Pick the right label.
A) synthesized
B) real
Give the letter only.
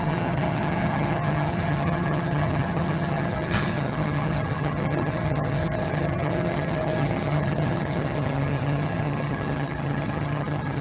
A